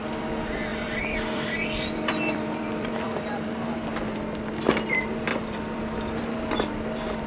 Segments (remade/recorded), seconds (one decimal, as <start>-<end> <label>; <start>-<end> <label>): 0.0-0.7 recorded; 0.7-3.5 remade; 3.5-5.3 recorded; 5.3-5.8 remade; 5.8-7.3 recorded